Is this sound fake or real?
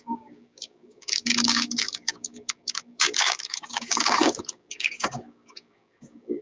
fake